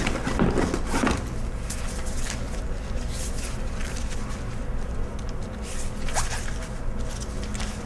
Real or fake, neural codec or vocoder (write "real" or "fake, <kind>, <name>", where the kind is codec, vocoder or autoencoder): real